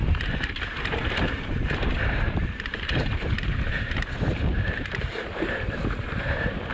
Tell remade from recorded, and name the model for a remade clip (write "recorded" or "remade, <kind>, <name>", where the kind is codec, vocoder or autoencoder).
remade, vocoder, BigVGAN v2